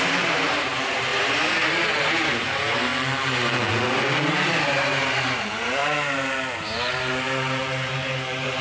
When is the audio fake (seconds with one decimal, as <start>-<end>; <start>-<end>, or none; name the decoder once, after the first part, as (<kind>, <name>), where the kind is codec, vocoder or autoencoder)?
0.0-2.9 (vocoder, BigVGAN v2); 4.5-5.8; 6.5-8.6